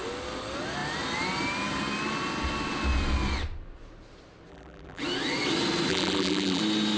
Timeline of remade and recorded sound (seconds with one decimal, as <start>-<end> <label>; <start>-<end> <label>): 0.0-4.5 recorded; 4.5-5.0 remade; 5.0-5.9 recorded; 5.9-6.6 remade; 6.6-7.0 recorded